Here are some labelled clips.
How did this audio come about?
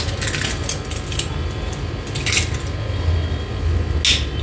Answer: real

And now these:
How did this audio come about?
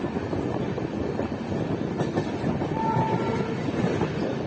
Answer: real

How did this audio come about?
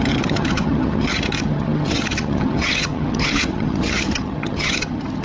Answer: fake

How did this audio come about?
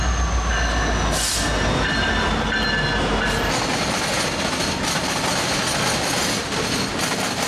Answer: real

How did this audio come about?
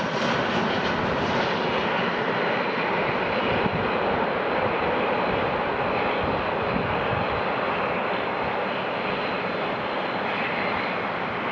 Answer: real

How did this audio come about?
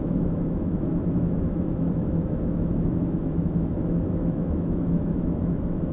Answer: fake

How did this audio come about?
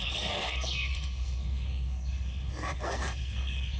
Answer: fake